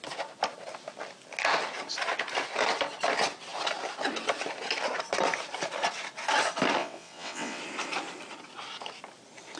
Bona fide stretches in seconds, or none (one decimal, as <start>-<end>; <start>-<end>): 0.0-6.8; 7.6-9.6